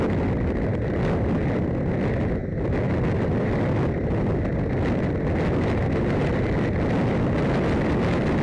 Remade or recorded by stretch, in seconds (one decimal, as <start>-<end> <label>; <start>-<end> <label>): 0.0-8.4 recorded